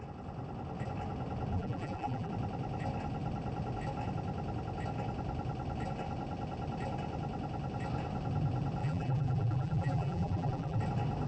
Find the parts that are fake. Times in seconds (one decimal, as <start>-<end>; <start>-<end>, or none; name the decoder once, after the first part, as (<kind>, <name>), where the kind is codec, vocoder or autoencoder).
1.5-2.3 (vocoder, BigVGAN v2); 8.8-10.8